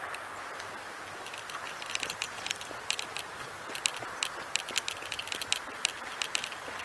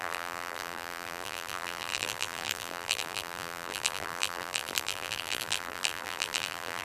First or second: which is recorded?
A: first